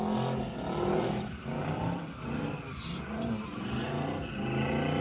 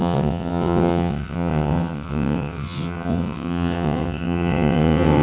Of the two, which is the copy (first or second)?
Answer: second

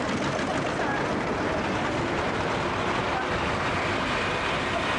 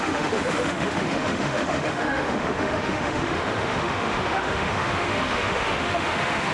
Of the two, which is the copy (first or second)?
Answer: second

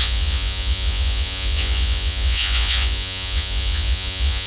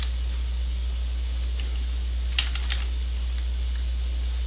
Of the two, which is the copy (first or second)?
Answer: first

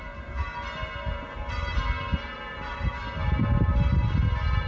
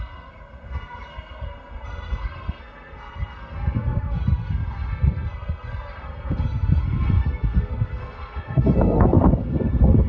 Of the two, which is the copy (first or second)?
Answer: second